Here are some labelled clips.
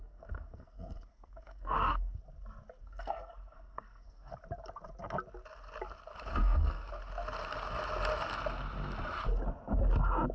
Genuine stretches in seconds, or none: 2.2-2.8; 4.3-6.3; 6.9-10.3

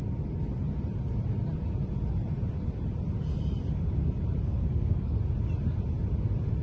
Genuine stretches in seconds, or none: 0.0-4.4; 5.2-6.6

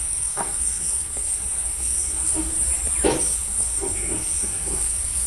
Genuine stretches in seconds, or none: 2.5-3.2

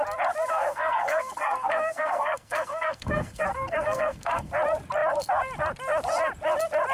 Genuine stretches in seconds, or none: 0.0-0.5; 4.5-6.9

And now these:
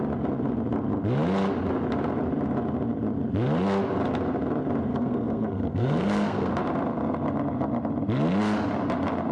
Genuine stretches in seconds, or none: 0.0-4.9; 6.5-9.3

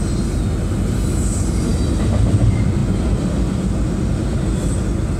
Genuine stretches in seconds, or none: 0.0-5.2

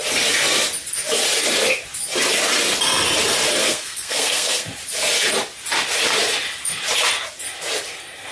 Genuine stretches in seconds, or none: 0.0-3.6; 4.7-8.3

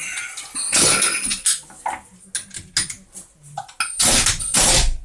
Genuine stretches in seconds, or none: 0.0-5.0